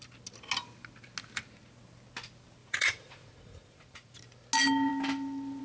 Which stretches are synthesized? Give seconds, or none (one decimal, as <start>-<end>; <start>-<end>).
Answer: 2.6-4.2